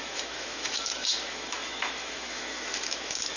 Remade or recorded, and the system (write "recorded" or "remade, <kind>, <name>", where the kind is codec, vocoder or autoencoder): remade, autoencoder, DAC-VAE